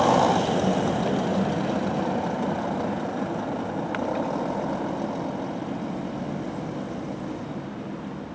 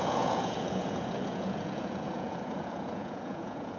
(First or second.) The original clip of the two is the first